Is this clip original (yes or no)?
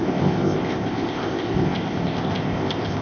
no